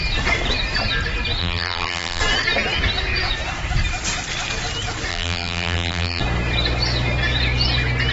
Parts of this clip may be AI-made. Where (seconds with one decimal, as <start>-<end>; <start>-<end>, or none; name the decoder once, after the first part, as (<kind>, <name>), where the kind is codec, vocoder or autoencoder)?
1.4-2.2 (vocoder, BigVGAN v2); 5.1-6.2